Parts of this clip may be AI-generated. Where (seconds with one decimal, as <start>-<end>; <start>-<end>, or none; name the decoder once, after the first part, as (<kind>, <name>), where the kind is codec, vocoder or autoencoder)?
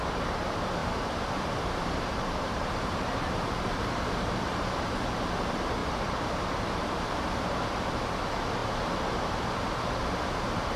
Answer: 0.8-5.0 (vocoder, BigVGAN v2)